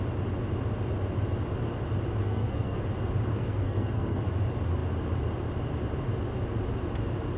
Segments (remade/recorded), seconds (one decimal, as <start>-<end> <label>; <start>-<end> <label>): 0.0-2.2 recorded; 2.2-2.8 remade; 2.8-3.3 recorded; 3.3-4.2 remade; 4.2-7.4 recorded